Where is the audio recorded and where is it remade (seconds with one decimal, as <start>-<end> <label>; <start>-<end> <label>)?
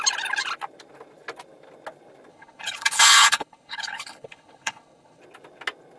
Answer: 0.0-2.3 recorded; 2.3-5.2 remade; 5.2-6.0 recorded